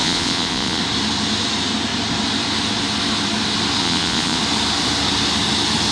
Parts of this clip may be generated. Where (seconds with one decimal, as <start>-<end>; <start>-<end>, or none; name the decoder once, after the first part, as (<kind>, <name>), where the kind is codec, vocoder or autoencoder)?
0.0-0.8 (vocoder, Vocos); 3.8-4.4